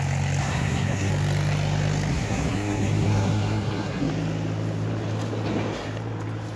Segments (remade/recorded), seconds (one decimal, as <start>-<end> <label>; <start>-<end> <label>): 0.0-0.4 recorded; 0.4-1.1 remade; 1.1-2.1 recorded; 2.1-4.1 remade; 4.1-6.6 recorded